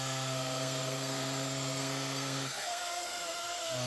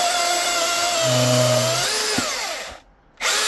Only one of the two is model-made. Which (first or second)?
first